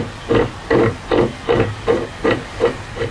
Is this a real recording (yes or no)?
yes